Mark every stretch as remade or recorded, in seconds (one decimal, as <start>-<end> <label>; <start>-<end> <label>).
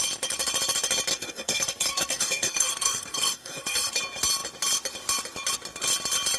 0.0-1.1 recorded; 1.1-3.9 remade; 3.9-6.4 recorded